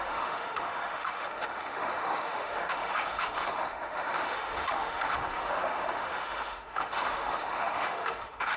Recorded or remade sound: remade